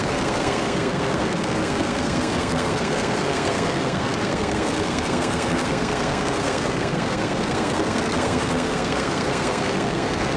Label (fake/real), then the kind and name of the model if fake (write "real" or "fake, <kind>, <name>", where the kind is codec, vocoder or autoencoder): fake, codec, SNAC